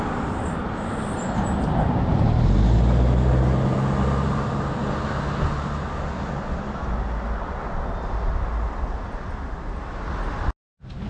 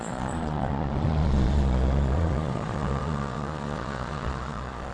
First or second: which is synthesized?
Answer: second